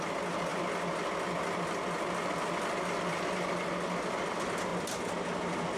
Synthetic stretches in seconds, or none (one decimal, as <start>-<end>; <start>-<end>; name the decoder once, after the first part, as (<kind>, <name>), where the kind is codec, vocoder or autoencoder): none